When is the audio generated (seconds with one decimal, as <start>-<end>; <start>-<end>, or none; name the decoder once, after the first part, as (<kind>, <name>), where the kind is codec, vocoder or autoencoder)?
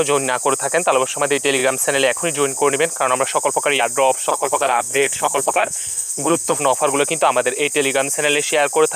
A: 4.3-6.6 (codec, SNAC)